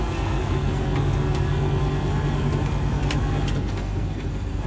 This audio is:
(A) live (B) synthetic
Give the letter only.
B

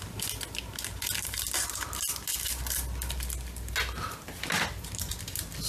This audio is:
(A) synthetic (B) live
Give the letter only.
B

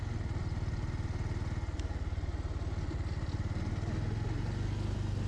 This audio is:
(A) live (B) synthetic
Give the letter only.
A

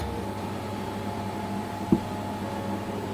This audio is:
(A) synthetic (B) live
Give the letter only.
B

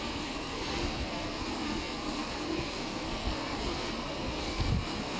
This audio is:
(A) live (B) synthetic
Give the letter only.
B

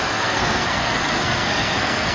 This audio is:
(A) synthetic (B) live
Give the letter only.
A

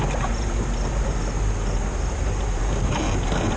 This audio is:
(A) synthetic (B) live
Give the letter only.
B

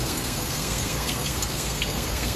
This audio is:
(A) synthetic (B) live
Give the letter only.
A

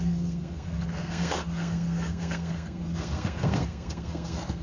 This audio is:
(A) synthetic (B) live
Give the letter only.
A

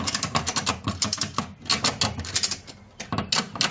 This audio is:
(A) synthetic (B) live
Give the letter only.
B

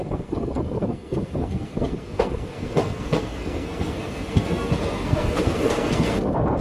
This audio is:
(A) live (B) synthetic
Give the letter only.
B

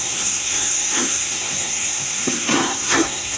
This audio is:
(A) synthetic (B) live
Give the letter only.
A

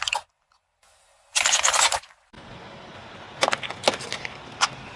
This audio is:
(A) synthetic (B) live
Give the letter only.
B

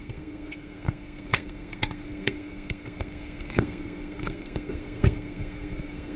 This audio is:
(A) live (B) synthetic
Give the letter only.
B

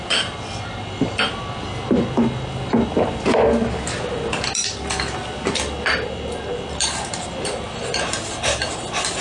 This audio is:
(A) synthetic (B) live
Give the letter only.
B